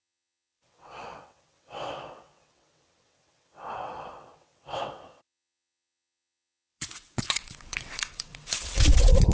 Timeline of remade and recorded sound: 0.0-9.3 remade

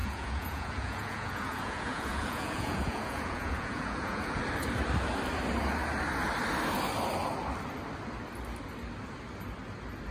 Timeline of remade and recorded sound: 0.0-4.4 remade; 4.4-10.1 recorded

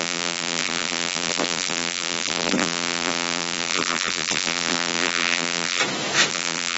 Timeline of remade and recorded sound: 0.0-5.8 remade; 5.8-6.3 recorded; 6.3-6.8 remade